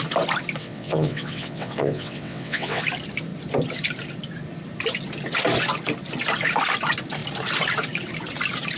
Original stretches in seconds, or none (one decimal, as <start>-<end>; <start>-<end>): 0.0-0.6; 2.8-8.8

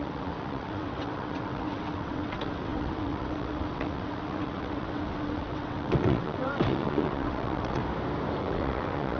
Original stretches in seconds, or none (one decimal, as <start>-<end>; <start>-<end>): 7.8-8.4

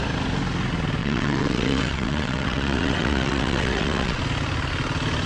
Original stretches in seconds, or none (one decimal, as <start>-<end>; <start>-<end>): 0.0-1.0; 4.2-5.3